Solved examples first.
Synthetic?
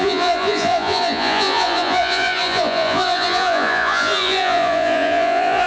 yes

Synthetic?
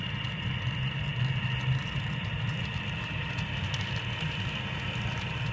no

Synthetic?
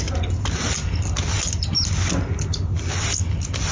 no